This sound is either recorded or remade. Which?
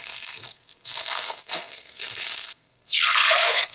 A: remade